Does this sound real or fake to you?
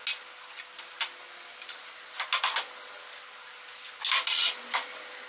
real